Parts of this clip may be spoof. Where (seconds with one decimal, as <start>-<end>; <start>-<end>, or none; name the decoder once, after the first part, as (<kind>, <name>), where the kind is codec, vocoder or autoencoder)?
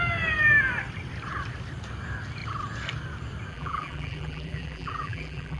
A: 3.5-5.6 (vocoder, BigVGAN v2)